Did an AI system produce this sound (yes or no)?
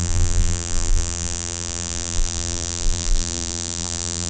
yes